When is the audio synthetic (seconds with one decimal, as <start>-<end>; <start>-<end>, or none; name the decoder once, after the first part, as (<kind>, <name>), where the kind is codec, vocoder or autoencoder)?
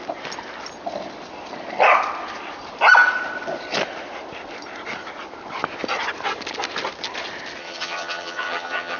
7.6-9.0 (vocoder, HiFi-GAN)